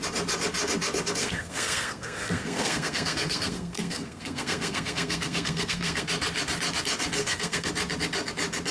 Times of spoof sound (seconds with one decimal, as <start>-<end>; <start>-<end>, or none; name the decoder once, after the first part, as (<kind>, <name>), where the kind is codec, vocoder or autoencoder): 1.2-6.1 (codec, SNAC); 7.2-7.7